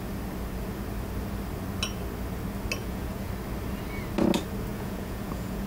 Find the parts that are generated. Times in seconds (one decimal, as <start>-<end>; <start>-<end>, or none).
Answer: 2.8-3.3; 4.7-5.7